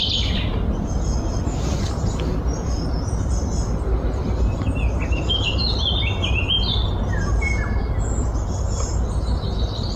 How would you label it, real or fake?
real